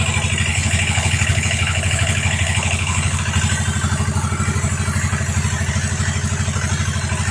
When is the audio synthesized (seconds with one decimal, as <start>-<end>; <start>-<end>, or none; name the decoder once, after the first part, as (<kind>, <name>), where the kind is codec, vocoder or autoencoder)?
0.5-3.2 (codec, HILCodec)